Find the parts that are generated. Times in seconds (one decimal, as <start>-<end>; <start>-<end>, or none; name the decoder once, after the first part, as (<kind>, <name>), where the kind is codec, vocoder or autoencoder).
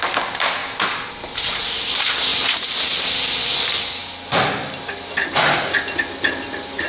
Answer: 0.6-1.1 (vocoder, BigVGAN v2); 2.3-3.4